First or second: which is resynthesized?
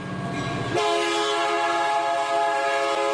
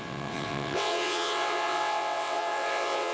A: second